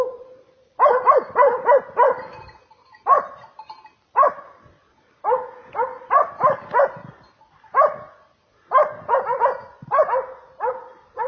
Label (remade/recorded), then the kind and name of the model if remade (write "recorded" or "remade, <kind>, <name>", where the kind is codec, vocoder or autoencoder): remade, vocoder, BigVGAN v2